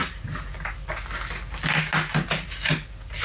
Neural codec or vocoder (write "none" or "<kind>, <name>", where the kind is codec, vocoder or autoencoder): none